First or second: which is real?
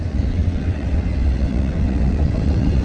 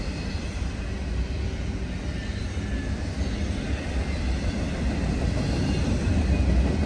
second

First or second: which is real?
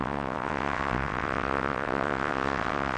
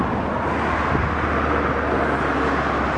second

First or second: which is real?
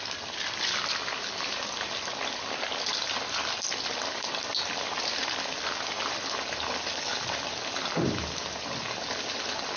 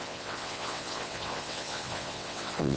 first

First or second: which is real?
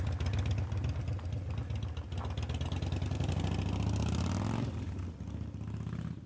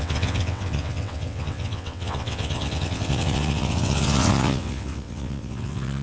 first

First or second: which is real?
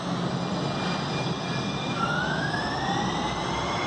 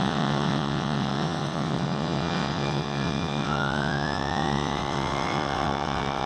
first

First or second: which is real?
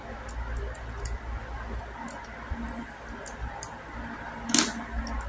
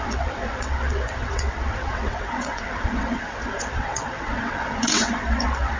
first